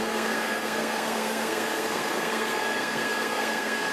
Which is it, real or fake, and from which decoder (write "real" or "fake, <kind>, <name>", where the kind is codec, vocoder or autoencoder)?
fake, codec, SNAC